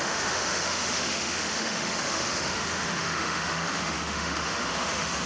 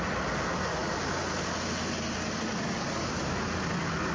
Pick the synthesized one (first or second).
first